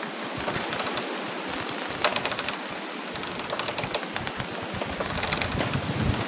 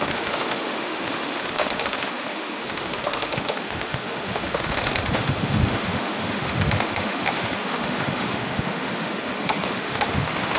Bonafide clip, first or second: first